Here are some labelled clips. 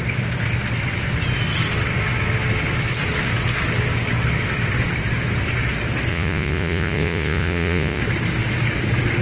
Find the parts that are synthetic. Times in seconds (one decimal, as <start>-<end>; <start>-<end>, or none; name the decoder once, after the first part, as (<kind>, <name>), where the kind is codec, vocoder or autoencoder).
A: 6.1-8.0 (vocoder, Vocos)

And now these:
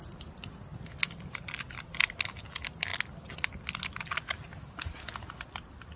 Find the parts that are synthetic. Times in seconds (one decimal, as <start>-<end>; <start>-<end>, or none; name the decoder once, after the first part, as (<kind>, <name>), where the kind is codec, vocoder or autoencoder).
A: none

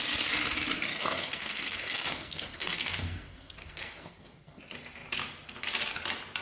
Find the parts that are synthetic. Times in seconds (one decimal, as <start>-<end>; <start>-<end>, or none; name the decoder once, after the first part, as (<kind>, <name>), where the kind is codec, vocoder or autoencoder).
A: 0.9-4.6 (codec, SNAC)

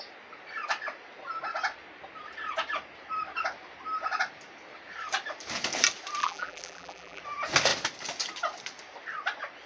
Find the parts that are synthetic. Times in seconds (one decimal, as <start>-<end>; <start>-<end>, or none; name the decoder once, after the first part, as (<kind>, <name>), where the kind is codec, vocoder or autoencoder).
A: 6.2-7.2 (vocoder, BigVGAN v2)